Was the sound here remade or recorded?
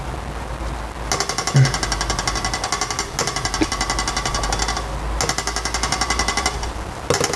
recorded